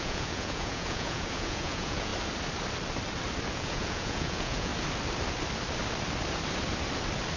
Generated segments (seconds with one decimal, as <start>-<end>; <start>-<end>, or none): 0.0-2.1; 3.5-4.7